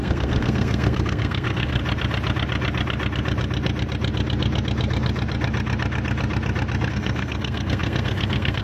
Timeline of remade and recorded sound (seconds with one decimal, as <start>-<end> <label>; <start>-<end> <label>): 0.0-1.8 remade; 1.8-6.9 recorded; 6.9-8.6 remade